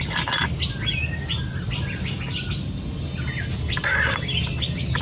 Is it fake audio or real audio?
real